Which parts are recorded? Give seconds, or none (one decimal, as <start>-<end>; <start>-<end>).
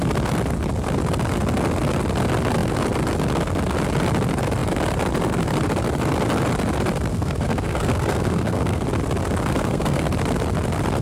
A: 0.0-7.1; 8.8-9.5; 10.0-11.0